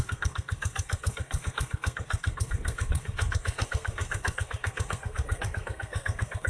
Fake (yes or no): yes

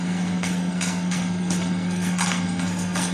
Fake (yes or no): yes